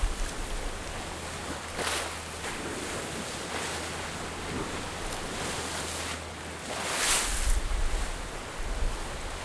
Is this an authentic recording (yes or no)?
yes